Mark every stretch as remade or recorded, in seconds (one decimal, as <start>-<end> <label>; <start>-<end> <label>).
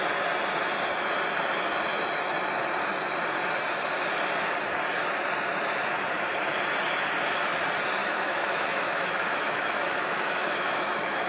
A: 0.0-8.0 recorded; 8.0-11.3 remade